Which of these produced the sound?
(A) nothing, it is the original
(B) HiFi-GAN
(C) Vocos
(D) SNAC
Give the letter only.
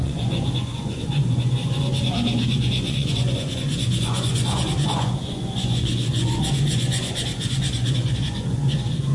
C